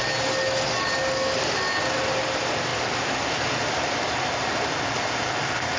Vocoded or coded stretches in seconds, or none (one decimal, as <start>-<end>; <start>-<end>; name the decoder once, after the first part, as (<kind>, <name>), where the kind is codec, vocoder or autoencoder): 2.7-5.8 (vocoder, BigVGAN v2)

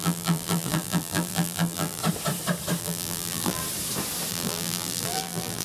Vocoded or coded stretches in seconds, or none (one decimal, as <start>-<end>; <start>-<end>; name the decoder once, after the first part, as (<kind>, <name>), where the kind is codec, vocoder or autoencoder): 0.0-2.0 (vocoder, BigVGAN v2); 2.8-3.6; 4.3-5.6